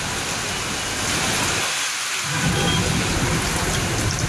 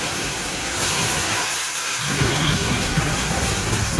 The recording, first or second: first